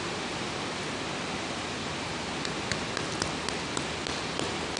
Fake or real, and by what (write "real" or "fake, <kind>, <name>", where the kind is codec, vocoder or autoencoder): real